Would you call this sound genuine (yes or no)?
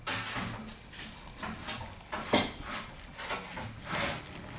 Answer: yes